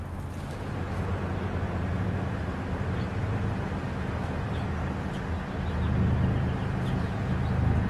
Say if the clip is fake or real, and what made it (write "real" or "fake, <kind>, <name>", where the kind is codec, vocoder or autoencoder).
real